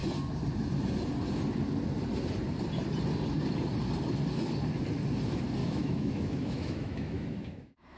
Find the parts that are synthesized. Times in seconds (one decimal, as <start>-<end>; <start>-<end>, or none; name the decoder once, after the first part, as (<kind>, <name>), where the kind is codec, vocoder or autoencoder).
5.6-8.0 (autoencoder, DAC-VAE)